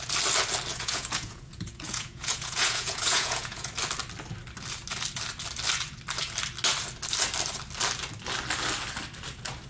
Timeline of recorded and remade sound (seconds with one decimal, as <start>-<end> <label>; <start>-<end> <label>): 0.0-0.7 recorded; 0.7-3.7 remade; 3.7-9.7 recorded